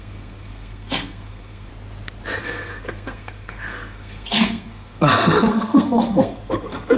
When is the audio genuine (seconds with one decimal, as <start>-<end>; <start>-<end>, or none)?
1.7-2.4